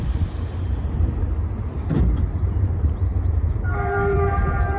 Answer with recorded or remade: remade